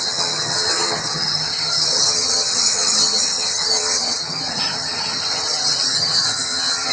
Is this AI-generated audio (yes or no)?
yes